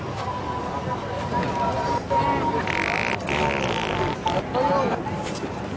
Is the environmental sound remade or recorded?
recorded